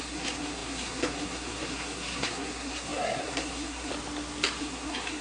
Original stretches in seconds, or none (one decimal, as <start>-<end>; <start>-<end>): 3.9-4.6

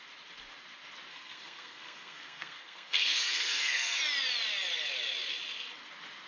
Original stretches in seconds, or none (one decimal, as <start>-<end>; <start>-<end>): 0.0-1.1; 4.0-6.3

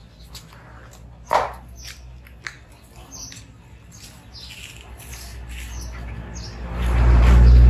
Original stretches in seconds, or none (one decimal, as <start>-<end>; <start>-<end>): 0.0-7.7

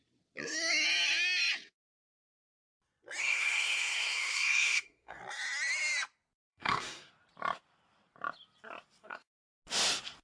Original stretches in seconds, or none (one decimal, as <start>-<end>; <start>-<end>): 0.0-3.2; 5.2-6.5; 7.1-9.0; 9.6-10.2

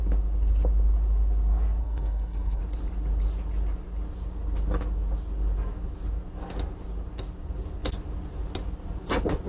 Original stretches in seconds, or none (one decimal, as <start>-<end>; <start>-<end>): 0.0-1.8; 2.6-9.5

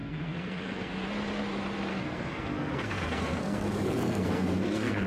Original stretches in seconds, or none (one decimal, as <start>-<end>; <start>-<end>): 0.9-1.9

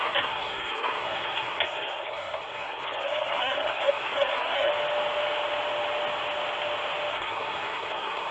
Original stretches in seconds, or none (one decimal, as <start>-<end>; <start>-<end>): 4.7-7.1